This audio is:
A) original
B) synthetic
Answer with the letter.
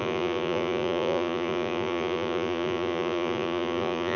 B